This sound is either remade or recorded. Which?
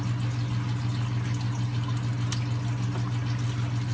recorded